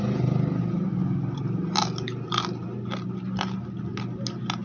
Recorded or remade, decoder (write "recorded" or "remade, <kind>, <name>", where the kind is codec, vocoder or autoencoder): recorded